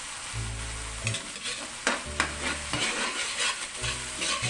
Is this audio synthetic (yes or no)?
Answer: no